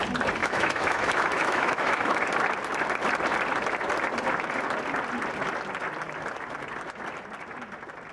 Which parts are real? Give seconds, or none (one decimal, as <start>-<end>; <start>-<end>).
0.0-0.4; 2.2-8.1